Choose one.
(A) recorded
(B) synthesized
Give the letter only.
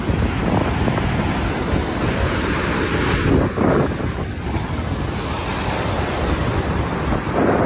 A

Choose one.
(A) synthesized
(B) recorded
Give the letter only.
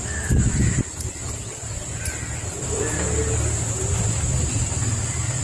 B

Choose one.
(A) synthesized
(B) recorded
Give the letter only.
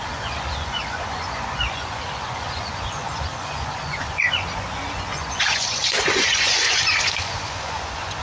A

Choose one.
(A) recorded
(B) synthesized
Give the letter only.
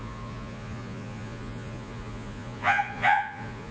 B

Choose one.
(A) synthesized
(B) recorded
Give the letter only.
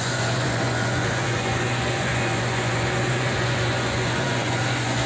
A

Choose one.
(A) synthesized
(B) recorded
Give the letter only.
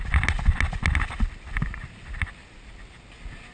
B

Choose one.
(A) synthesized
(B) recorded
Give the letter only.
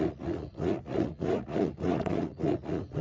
A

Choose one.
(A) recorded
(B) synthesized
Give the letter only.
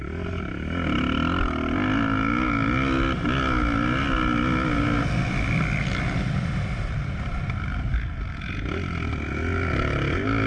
A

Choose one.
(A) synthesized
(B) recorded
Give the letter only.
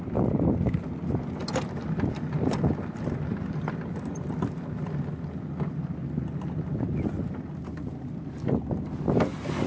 B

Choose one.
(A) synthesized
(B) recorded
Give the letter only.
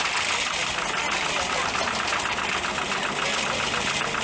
B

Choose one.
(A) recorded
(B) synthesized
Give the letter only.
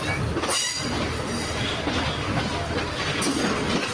A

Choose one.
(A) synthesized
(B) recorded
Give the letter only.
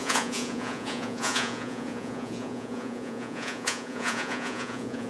A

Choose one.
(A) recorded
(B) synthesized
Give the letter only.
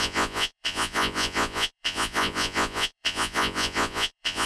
B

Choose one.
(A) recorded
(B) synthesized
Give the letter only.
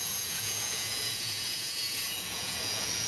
B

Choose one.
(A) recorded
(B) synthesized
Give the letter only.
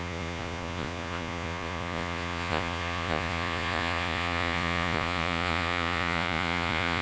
B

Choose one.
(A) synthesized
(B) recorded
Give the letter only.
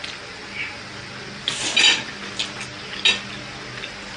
B